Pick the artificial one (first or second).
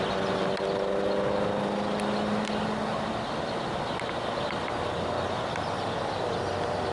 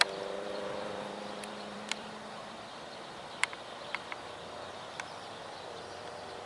second